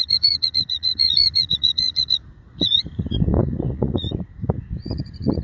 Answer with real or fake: fake